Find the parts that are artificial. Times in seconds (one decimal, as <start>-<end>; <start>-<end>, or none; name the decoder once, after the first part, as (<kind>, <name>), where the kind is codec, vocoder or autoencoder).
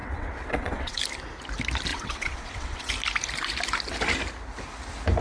0.0-1.0 (vocoder, WaveNeXt); 1.9-2.9